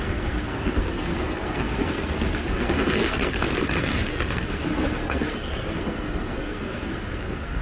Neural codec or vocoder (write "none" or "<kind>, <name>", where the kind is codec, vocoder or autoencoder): codec, SNAC